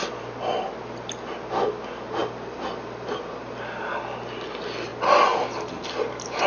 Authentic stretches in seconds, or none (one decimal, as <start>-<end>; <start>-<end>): 0.0-2.2; 3.8-6.5